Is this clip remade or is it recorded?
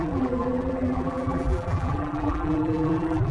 remade